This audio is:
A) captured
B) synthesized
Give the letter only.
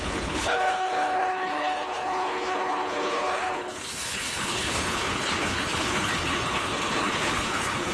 B